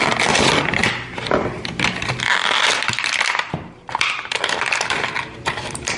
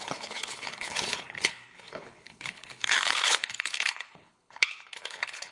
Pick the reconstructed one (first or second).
second